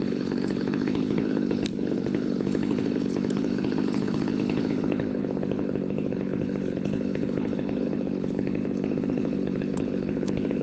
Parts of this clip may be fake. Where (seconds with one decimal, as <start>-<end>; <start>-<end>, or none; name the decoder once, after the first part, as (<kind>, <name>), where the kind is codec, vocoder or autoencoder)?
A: 0.0-10.6 (codec, HILCodec)

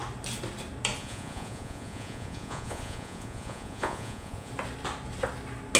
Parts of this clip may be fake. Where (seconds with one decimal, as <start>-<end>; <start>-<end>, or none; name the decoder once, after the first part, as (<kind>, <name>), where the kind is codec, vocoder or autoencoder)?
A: 1.0-4.5 (vocoder, Vocos)

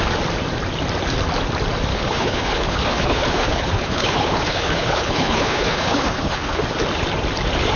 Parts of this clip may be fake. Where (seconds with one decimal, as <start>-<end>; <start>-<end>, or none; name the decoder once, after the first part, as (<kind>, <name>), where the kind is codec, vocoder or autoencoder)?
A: 1.9-6.6 (codec, HILCodec)

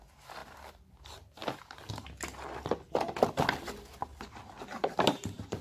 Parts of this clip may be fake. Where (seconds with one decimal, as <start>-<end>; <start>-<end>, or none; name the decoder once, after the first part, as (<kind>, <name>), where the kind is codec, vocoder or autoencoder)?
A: 4.1-5.6 (vocoder, BigVGAN v2)

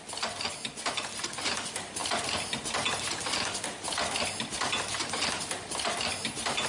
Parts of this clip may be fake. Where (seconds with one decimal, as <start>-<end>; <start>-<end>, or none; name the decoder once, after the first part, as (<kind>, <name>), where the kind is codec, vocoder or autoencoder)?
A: none

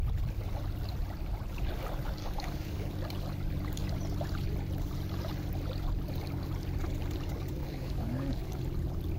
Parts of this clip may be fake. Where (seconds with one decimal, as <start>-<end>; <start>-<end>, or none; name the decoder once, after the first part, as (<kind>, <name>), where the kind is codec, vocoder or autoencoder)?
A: 2.2-2.9 (codec, DAC); 7.6-8.6